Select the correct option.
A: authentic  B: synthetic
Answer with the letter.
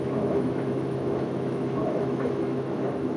B